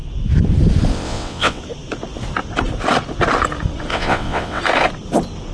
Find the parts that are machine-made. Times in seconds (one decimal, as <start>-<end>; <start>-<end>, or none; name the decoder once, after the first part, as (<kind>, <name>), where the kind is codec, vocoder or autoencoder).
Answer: 0.9-1.6 (vocoder, WaveNeXt); 3.9-4.6